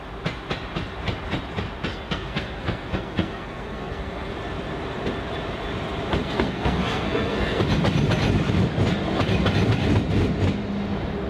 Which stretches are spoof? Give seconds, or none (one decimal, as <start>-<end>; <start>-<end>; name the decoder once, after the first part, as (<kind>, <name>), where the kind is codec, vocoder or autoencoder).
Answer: 1.9-4.3 (codec, SNAC); 6.2-7.6

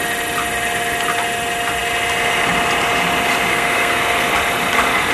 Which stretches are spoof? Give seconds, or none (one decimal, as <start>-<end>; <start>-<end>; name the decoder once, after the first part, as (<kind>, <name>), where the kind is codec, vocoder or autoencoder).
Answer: 3.5-4.3 (codec, SNAC)